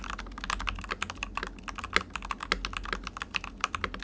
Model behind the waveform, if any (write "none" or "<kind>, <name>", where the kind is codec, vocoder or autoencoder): none